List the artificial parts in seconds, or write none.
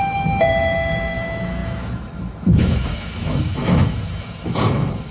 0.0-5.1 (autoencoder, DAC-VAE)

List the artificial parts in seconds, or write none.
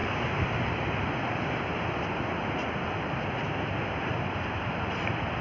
none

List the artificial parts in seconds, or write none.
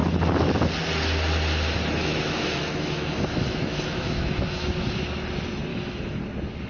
2.0-5.0 (autoencoder, DAC-VAE); 5.7-6.2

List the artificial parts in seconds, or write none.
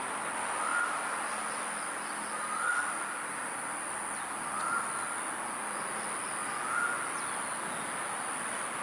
none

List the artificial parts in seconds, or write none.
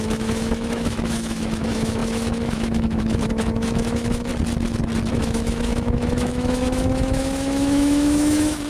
0.0-4.3 (autoencoder, DAC-VAE); 5.1-8.7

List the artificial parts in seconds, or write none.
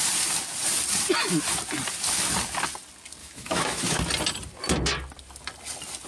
3.2-4.0 (autoencoder, DAC-VAE)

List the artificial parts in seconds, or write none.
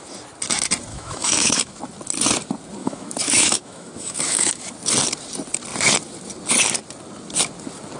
0.9-1.8 (autoencoder, DAC-VAE); 2.8-4.7